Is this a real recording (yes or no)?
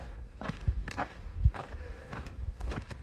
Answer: no